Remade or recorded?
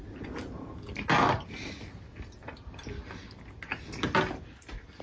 recorded